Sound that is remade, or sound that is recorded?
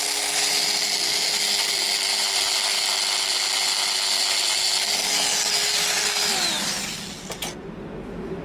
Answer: recorded